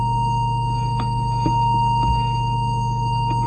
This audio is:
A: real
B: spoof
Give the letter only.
B